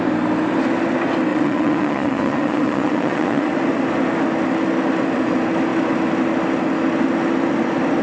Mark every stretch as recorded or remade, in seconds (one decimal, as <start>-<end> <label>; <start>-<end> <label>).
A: 0.0-1.3 recorded; 1.3-3.5 remade; 3.5-8.0 recorded